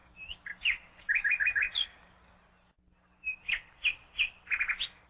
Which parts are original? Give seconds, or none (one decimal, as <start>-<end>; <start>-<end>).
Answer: 2.4-5.1